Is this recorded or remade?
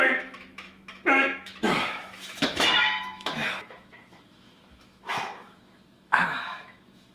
remade